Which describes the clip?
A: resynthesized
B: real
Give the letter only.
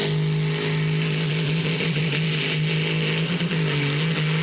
B